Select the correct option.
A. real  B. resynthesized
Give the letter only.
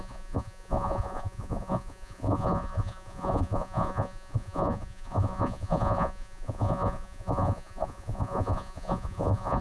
B